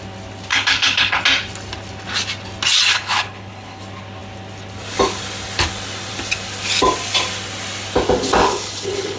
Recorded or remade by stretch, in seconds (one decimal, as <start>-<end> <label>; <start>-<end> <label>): 0.0-0.5 recorded; 0.5-1.2 remade; 1.2-2.9 recorded; 2.9-3.8 remade; 3.8-8.4 recorded; 8.4-9.2 remade